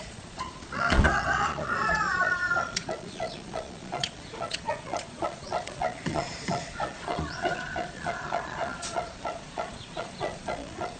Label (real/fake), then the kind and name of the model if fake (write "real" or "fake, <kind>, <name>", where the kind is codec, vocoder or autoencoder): fake, vocoder, Vocos